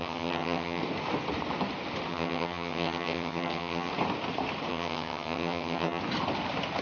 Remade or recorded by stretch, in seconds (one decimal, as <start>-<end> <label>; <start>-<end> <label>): 0.0-0.8 remade; 0.8-2.1 recorded; 2.1-3.9 remade; 3.9-4.7 recorded; 4.7-6.0 remade; 6.0-6.8 recorded